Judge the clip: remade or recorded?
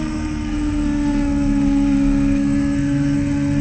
remade